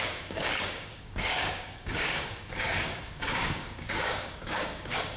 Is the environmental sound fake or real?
fake